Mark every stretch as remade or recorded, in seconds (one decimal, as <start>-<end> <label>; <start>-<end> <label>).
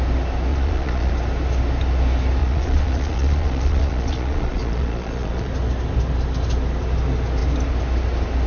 0.0-0.5 recorded; 0.5-1.1 remade; 1.1-2.4 recorded; 2.4-5.5 remade; 5.5-8.5 recorded